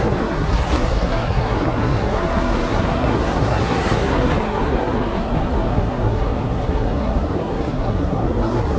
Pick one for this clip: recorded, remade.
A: remade